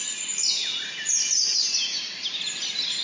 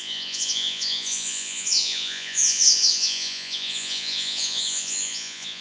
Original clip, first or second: first